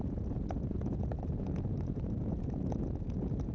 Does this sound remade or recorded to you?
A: remade